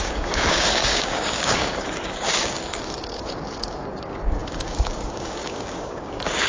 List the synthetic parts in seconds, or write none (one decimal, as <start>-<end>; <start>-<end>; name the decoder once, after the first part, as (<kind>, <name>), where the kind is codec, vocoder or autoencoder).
0.0-6.5 (codec, DAC)